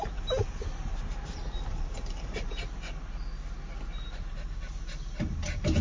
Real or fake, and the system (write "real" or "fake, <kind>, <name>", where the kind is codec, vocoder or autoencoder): real